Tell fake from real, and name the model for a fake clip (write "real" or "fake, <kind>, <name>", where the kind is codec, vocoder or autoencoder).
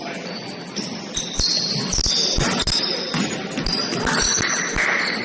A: real